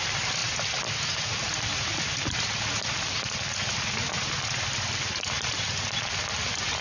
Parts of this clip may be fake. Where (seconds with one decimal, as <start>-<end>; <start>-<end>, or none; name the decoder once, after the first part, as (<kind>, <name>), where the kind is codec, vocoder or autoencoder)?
none